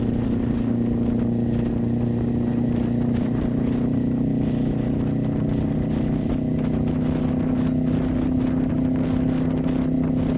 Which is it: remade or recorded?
recorded